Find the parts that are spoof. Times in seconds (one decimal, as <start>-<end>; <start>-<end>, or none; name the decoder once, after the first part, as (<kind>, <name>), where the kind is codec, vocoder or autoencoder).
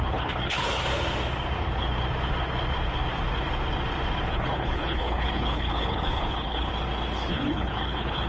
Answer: 0.0-0.8 (codec, HILCodec); 4.3-6.7; 7.3-8.3